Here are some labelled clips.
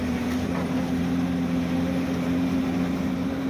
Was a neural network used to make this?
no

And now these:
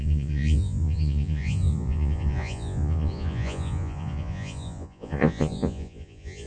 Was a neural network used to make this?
yes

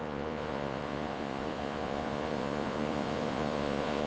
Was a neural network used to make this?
yes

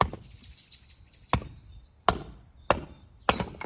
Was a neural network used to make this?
no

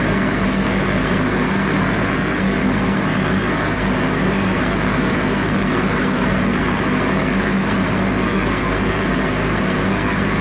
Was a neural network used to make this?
yes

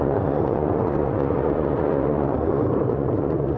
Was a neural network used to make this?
yes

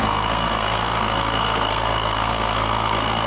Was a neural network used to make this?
yes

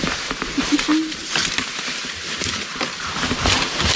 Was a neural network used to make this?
yes